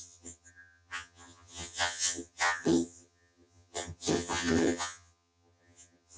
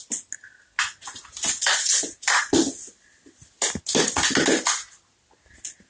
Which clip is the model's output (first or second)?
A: first